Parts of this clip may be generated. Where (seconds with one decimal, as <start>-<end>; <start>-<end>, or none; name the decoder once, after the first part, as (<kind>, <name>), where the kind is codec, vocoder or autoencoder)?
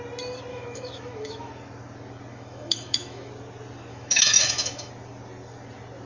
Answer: 0.5-1.5 (autoencoder, DAC-VAE); 2.3-3.3; 3.9-4.9